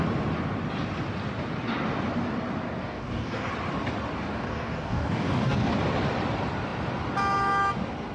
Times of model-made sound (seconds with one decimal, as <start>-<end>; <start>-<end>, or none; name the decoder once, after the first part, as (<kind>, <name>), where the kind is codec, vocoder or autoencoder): 2.8-3.5 (codec, DAC); 4.3-5.7